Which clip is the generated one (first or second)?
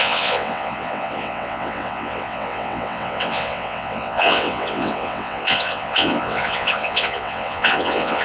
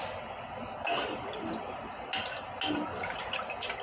first